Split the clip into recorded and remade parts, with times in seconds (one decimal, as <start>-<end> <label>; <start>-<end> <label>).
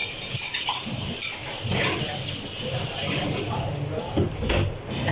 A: 0.0-0.6 recorded; 0.6-1.2 remade; 1.2-3.5 recorded; 3.5-5.1 remade